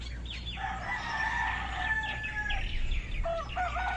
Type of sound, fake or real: real